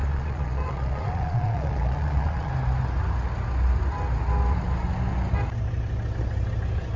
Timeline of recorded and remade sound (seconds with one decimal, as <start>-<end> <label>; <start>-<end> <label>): 0.0-2.5 remade; 2.5-7.0 recorded

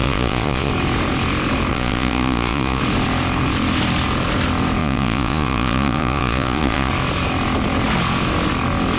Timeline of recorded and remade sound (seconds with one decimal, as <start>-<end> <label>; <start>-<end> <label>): 0.0-0.7 remade; 0.7-1.7 recorded; 1.7-2.8 remade; 2.8-4.8 recorded; 4.8-6.9 remade; 6.9-9.0 recorded

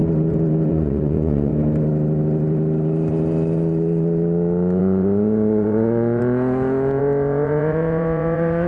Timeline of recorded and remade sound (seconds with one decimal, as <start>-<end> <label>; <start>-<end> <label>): 0.0-0.7 recorded; 0.7-1.5 remade; 1.5-4.8 recorded; 4.8-6.2 remade; 6.2-7.0 recorded; 7.0-8.7 remade

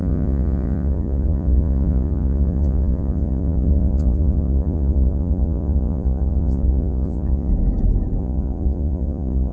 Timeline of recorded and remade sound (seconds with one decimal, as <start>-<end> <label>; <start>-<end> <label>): 0.0-7.5 remade; 7.5-8.2 recorded; 8.2-9.5 remade

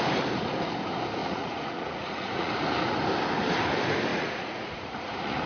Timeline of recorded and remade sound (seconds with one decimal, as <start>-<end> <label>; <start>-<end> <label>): 0.0-1.2 recorded; 1.2-2.5 remade; 2.5-4.1 recorded; 4.1-5.5 remade

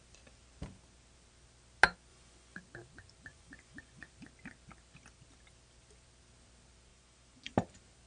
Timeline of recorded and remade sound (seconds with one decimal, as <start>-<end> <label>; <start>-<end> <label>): 0.0-2.1 recorded; 2.1-2.6 remade; 2.6-3.3 recorded; 3.3-4.1 remade; 4.1-6.9 recorded; 6.9-7.5 remade; 7.5-8.1 recorded

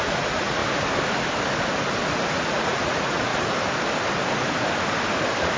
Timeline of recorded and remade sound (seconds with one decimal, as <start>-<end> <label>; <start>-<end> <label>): 0.0-0.6 remade; 0.6-2.3 recorded; 2.3-3.3 remade; 3.3-5.6 recorded